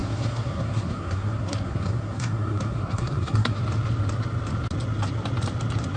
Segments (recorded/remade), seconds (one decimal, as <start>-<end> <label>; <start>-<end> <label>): 0.0-3.6 remade; 3.6-6.0 recorded